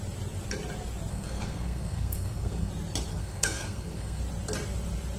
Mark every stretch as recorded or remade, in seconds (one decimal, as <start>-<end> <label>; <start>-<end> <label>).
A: 0.0-1.1 recorded; 1.1-2.7 remade; 2.7-3.1 recorded; 3.1-4.2 remade; 4.2-5.2 recorded